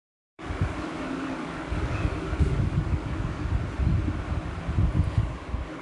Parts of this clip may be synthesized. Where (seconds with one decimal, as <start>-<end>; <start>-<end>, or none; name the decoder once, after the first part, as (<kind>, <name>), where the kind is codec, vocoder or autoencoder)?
0.0-3.5 (codec, DAC); 5.2-5.8